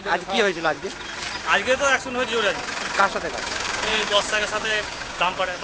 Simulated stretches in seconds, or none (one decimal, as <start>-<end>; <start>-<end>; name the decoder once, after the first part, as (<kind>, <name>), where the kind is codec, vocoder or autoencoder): 0.0-0.8 (codec, DAC); 3.3-5.6